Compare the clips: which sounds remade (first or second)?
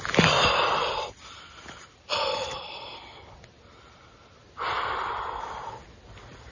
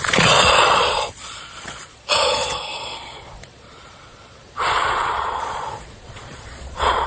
second